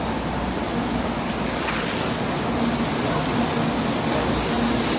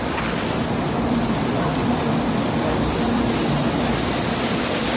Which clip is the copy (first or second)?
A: second